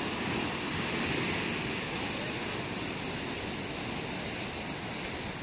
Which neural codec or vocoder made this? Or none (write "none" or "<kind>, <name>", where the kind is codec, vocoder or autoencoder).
none